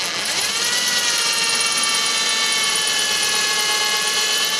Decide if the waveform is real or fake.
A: real